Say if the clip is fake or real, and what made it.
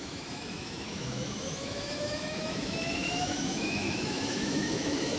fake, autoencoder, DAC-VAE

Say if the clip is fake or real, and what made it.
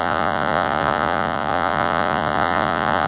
fake, vocoder, Vocos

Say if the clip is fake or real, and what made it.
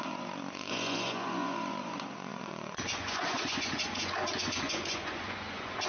fake, vocoder, Vocos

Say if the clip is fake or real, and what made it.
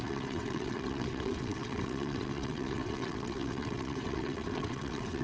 fake, vocoder, WaveNeXt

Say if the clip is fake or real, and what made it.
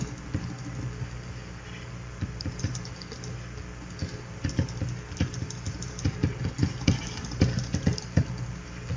real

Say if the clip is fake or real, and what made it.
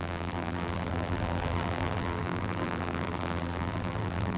fake, vocoder, BigVGAN v2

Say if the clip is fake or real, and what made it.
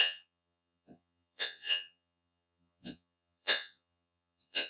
fake, vocoder, Vocos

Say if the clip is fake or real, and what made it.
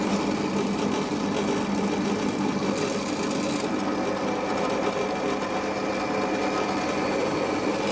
real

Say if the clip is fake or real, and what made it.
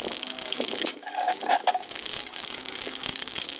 fake, codec, DAC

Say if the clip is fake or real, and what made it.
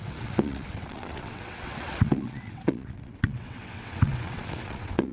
fake, vocoder, WaveNeXt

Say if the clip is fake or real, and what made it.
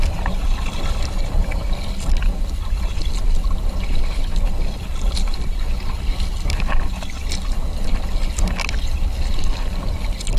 real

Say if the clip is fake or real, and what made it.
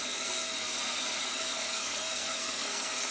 fake, codec, SNAC